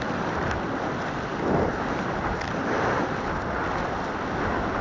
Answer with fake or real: real